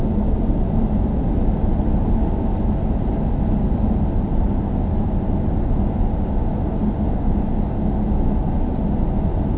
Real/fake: real